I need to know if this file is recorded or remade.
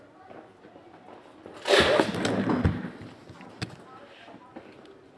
recorded